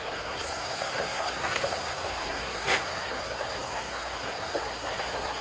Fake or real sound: fake